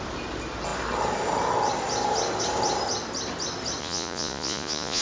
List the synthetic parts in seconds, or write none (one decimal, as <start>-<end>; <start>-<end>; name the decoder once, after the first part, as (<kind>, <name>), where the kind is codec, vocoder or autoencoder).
3.8-5.0 (vocoder, Vocos)